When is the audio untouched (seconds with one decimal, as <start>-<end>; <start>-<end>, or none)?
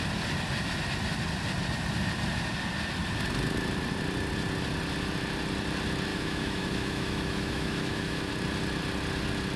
0.0-6.1; 8.3-9.6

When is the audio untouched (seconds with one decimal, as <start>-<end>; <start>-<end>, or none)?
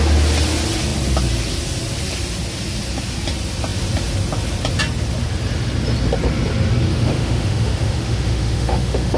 0.0-6.9